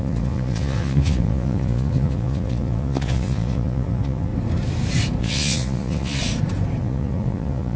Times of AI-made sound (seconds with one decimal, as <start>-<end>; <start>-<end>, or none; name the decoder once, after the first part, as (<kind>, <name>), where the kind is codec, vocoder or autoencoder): 0.0-4.3 (vocoder, Vocos); 5.2-6.2; 6.8-7.8